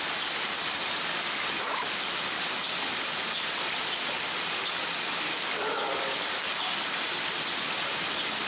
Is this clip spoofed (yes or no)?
no